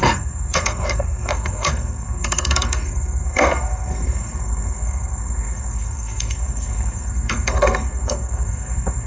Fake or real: fake